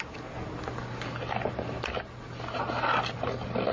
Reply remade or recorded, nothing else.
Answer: recorded